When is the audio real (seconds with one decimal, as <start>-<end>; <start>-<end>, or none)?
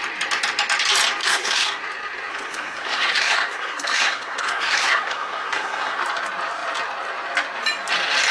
0.0-1.2; 1.8-2.3; 6.0-8.3